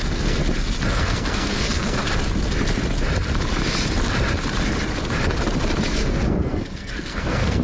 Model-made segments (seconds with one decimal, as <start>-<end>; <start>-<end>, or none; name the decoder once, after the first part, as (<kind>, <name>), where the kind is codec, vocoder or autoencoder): 0.0-0.4 (codec, SNAC); 0.9-2.0; 5.9-7.6